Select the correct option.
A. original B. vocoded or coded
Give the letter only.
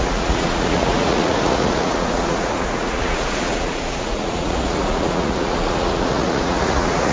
B